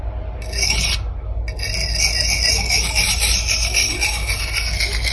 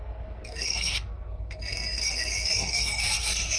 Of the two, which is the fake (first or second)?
second